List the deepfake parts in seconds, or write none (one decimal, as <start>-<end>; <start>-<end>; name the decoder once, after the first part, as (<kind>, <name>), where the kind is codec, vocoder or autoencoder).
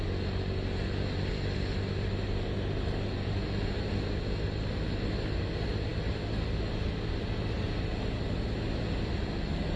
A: none